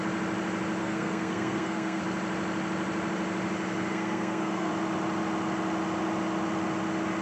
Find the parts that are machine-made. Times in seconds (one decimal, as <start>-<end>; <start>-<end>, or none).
0.8-2.0; 3.9-4.7